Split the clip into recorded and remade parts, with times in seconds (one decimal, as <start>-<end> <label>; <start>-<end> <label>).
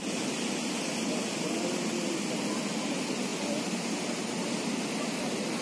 0.0-5.6 recorded